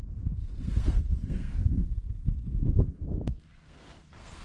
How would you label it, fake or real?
fake